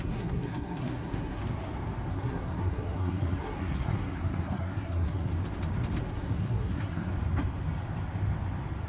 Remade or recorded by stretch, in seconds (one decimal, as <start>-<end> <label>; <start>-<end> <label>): 0.0-1.4 remade; 1.4-2.1 recorded; 2.1-5.3 remade; 5.3-6.1 recorded; 6.1-7.1 remade; 7.1-8.9 recorded

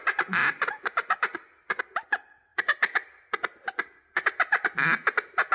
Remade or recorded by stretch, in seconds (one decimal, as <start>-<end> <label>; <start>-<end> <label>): 0.0-2.5 recorded; 2.5-3.3 remade; 3.3-5.5 recorded